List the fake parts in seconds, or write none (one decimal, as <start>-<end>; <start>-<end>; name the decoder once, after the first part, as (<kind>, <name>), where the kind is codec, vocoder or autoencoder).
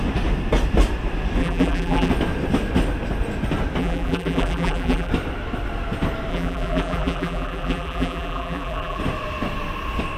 1.4-2.1 (vocoder, BigVGAN v2); 3.8-5.1; 6.3-9.0